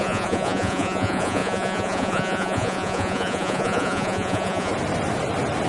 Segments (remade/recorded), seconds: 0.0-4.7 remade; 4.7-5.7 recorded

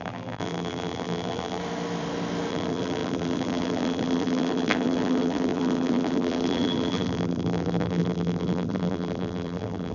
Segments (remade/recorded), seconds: 0.0-1.6 remade; 1.6-2.5 recorded; 2.5-9.9 remade

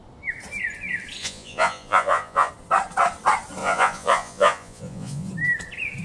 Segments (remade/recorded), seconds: 0.0-1.2 recorded; 1.2-2.5 remade; 2.5-3.6 recorded; 3.6-5.3 remade; 5.3-6.0 recorded

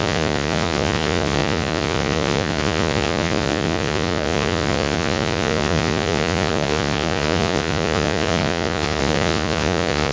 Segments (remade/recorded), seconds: 0.0-10.1 remade

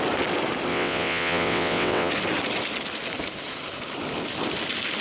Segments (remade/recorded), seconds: 0.0-0.7 recorded; 0.7-2.1 remade; 2.1-5.0 recorded

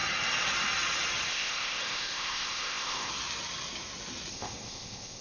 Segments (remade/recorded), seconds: 0.0-1.3 recorded; 1.3-3.1 remade; 3.1-4.3 recorded; 4.3-5.2 remade